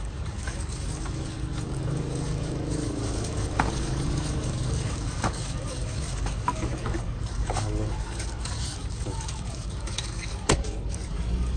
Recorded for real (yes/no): no